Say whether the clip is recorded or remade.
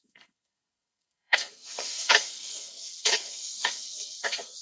remade